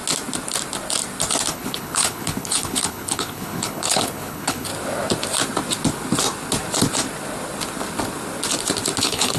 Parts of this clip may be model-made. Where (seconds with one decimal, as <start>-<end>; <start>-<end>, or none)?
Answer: 1.5-4.7; 9.0-9.4